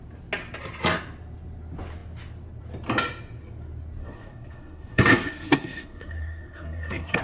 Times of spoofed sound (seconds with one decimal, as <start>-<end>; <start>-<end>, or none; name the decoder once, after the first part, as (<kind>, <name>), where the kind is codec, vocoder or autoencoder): 4.0-7.2 (codec, SNAC)